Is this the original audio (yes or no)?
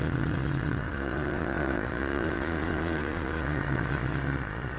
no